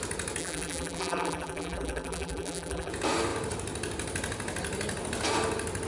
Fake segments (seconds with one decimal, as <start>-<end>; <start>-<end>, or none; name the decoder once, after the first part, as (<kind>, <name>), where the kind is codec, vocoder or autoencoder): 0.4-2.9 (vocoder, BigVGAN v2)